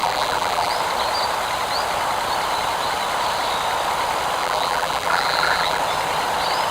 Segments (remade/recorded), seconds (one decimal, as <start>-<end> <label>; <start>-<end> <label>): 0.0-0.7 remade; 0.7-4.4 recorded; 4.4-5.8 remade; 5.8-6.7 recorded